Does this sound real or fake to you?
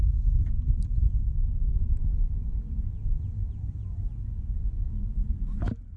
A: real